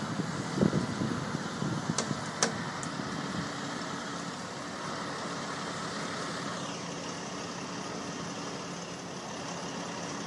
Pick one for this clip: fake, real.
real